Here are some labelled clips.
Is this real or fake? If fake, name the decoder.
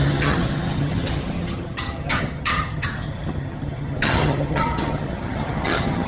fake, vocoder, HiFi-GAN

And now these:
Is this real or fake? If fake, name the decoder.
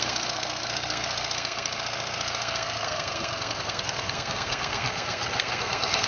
fake, codec, SNAC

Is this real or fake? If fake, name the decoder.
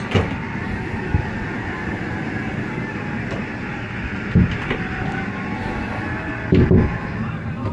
real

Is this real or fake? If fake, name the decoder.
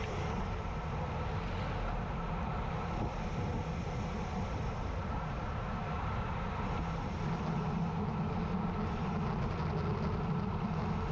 real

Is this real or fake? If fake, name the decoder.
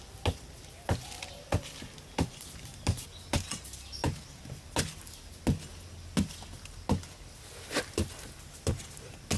real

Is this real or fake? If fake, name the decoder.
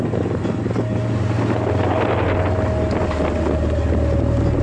real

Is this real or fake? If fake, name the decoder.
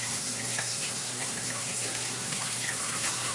fake, codec, SNAC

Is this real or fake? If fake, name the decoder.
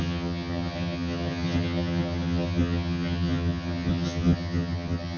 fake, vocoder, HiFi-GAN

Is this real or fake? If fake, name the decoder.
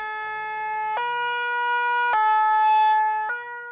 real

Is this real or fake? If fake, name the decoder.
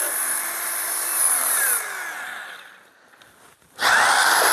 fake, vocoder, BigVGAN v2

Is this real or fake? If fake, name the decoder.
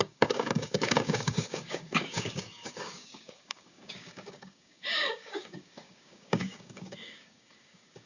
fake, codec, DAC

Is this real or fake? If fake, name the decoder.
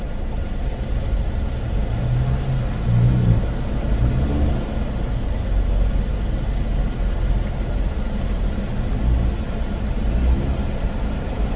real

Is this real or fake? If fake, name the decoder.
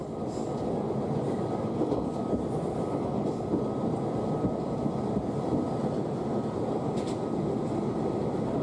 real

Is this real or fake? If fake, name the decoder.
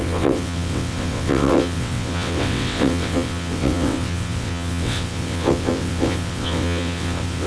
fake, vocoder, WaveNeXt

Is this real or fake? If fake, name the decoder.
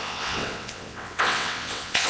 fake, vocoder, WaveNeXt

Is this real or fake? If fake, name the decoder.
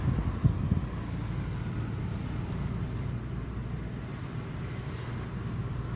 real